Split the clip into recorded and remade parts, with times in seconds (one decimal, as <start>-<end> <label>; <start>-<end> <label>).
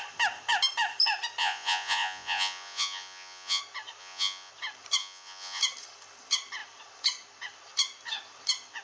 0.0-1.4 recorded; 1.4-3.6 remade; 3.6-4.0 recorded; 4.0-4.5 remade; 4.5-5.0 recorded; 5.0-5.6 remade; 5.6-8.8 recorded